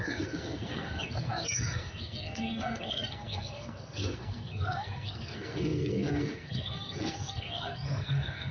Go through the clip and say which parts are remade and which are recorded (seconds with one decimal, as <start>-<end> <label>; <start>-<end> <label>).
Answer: 0.0-8.5 remade